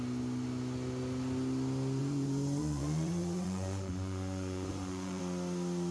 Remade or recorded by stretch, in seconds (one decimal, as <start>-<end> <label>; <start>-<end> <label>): 0.0-2.0 recorded; 2.0-5.2 remade; 5.2-5.9 recorded